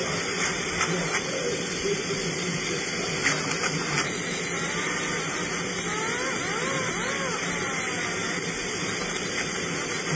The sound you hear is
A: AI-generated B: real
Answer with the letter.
B